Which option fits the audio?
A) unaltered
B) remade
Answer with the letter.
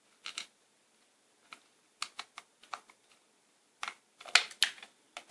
A